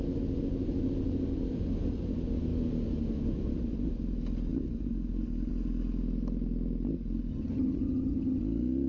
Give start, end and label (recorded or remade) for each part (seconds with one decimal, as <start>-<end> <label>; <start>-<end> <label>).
0.0-7.3 recorded; 7.3-8.4 remade; 8.4-8.9 recorded